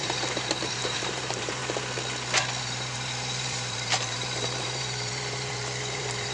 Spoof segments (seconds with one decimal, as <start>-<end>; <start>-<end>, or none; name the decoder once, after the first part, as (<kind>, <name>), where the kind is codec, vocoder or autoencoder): 0.0-1.6 (vocoder, BigVGAN v2); 2.6-6.3